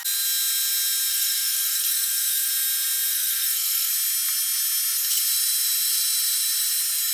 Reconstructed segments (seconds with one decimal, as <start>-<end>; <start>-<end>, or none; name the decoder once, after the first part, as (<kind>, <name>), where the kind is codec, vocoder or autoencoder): 1.1-2.5 (codec, SNAC); 3.1-3.9